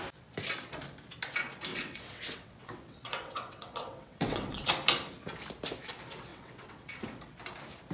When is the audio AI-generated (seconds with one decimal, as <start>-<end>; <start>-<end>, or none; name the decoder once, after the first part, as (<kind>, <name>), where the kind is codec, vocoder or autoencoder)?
1.7-4.7 (vocoder, WaveNeXt); 6.3-7.2